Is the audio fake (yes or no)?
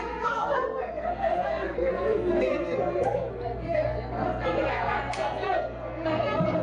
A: yes